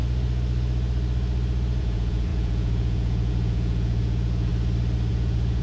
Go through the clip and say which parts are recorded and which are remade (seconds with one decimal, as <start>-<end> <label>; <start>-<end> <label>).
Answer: 0.0-1.8 recorded; 1.8-4.5 remade; 4.5-5.1 recorded; 5.1-5.6 remade